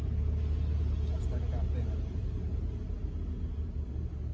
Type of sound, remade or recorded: recorded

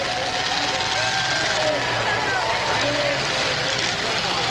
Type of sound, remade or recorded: recorded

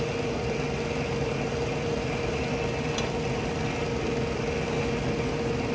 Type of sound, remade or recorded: recorded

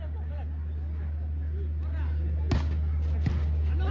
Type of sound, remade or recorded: recorded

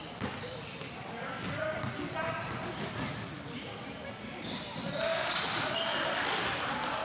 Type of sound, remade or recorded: recorded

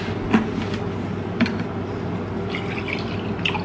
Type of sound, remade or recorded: recorded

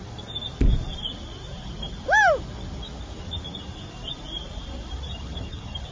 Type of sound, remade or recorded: remade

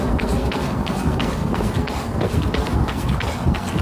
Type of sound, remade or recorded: remade